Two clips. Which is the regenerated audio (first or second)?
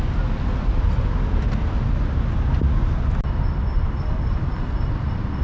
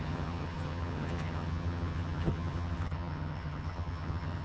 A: second